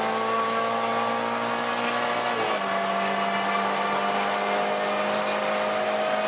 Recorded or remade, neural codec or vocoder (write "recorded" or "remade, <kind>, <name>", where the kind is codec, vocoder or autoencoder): recorded